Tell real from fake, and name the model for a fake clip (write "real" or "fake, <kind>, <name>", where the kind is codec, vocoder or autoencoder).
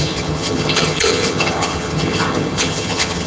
fake, vocoder, HiFi-GAN